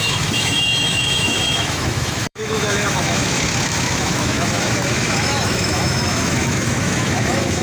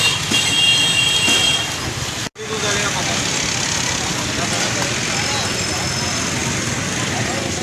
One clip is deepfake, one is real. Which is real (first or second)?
second